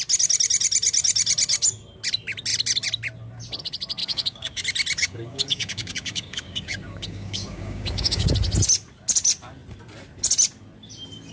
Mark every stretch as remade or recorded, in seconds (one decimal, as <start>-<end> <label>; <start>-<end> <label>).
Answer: 0.0-4.0 recorded; 4.0-4.6 remade; 4.6-5.0 recorded; 5.0-8.3 remade; 8.3-11.3 recorded